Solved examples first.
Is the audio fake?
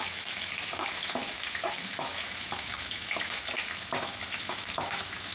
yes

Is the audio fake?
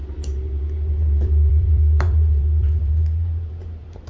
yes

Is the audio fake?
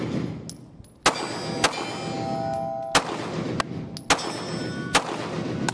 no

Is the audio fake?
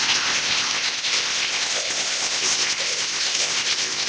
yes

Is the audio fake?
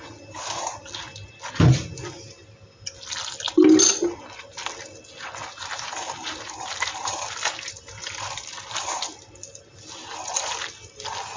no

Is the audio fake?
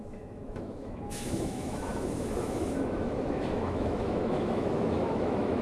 yes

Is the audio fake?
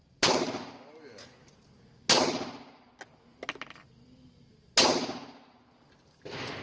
no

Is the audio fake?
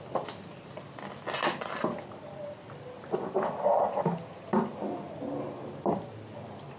no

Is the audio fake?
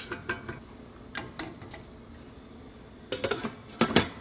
no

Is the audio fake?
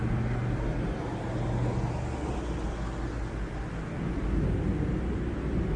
no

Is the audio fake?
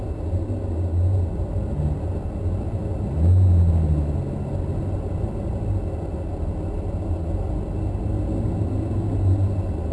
no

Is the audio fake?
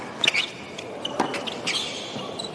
no